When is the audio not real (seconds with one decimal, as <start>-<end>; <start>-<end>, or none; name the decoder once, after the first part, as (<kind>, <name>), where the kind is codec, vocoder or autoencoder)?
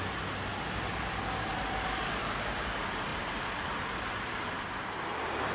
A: none